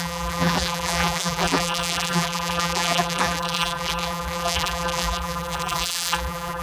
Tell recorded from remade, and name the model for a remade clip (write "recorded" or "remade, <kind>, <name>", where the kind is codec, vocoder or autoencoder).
remade, vocoder, BigVGAN v2